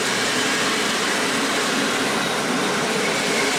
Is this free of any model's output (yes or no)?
yes